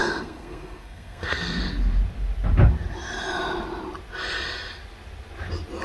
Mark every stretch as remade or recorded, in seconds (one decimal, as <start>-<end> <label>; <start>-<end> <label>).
0.0-1.6 remade; 1.6-5.8 recorded